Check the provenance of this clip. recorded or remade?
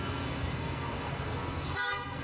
remade